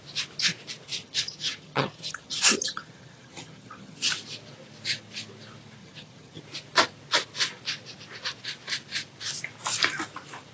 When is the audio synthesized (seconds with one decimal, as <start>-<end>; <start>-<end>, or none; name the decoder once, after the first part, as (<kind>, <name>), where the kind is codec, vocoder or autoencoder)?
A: 1.0-4.1 (vocoder, HiFi-GAN); 5.8-6.4